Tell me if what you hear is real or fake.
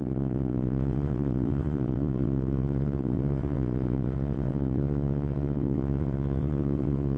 fake